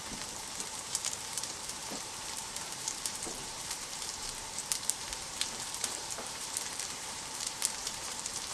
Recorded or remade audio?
remade